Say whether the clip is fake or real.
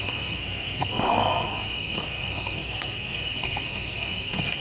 fake